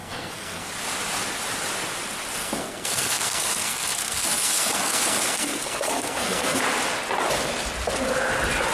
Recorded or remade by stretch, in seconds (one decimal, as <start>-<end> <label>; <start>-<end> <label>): 0.0-0.7 remade; 0.7-2.4 recorded; 2.4-6.6 remade; 6.6-8.7 recorded